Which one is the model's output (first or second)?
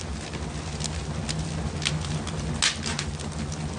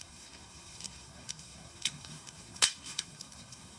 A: second